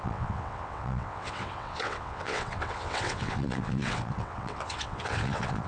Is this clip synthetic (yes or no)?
yes